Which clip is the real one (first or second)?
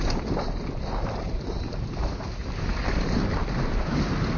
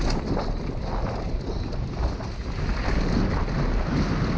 second